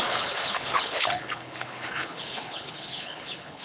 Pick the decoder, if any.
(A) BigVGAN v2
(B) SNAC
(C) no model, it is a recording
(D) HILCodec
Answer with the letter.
D